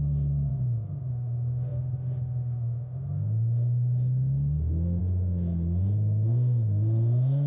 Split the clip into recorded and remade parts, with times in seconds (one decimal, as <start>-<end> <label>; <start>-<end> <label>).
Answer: 0.0-7.5 remade

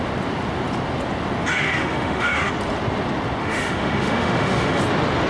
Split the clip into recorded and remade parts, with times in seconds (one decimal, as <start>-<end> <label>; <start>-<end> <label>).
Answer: 0.0-1.5 recorded; 1.5-2.5 remade; 2.5-3.4 recorded; 3.4-4.8 remade; 4.8-5.3 recorded

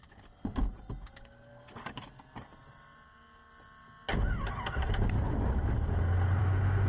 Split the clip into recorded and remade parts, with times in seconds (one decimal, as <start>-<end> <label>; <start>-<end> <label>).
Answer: 0.0-6.4 recorded; 6.4-6.9 remade

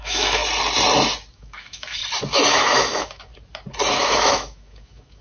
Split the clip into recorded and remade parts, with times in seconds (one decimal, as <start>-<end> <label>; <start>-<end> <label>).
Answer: 0.0-0.4 remade; 0.4-1.3 recorded; 1.3-2.0 remade; 2.0-2.5 recorded; 2.5-3.3 remade; 3.3-3.9 recorded; 3.9-5.2 remade

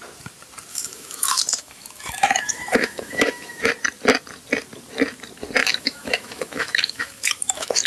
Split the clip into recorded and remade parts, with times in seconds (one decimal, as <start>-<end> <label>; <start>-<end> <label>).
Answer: 0.0-0.7 recorded; 0.7-3.7 remade; 3.7-5.6 recorded; 5.6-7.9 remade

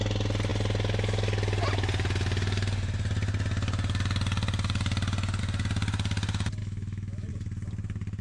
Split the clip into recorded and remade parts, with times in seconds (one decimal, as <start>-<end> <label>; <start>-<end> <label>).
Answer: 0.0-6.6 recorded; 6.6-7.3 remade; 7.3-8.2 recorded

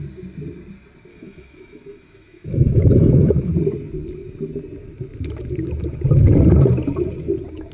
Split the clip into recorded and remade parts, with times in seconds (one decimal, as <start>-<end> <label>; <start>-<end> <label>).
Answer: 0.0-1.1 recorded; 1.1-3.5 remade; 3.5-7.7 recorded

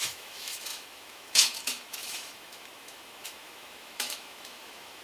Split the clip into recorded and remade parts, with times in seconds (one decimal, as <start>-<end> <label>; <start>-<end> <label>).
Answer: 0.0-5.0 remade